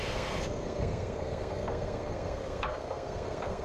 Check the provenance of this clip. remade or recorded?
remade